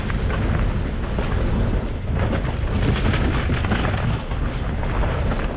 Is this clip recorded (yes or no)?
yes